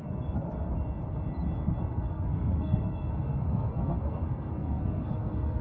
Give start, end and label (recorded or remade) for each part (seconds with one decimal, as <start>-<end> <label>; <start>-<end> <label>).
0.0-0.7 remade; 0.7-1.8 recorded; 1.8-5.6 remade